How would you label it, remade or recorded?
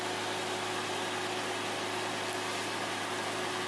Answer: recorded